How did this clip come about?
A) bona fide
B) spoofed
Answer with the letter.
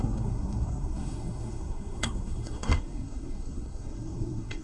B